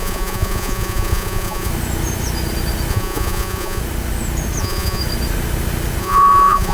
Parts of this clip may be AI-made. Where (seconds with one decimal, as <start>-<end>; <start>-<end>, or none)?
0.0-1.7; 2.9-3.8; 4.6-5.0; 6.0-6.7